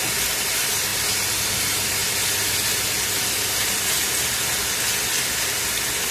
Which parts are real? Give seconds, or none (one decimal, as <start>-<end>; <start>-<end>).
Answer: 0.0-6.1